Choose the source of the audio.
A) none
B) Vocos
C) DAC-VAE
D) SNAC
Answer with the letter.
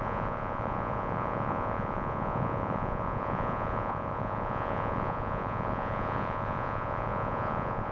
B